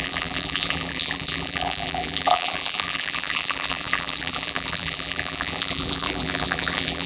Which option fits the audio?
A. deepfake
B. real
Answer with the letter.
A